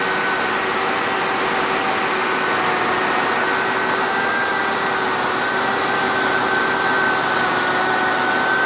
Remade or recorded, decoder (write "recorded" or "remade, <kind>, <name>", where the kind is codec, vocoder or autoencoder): recorded